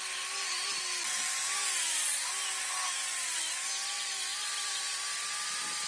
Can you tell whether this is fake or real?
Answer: real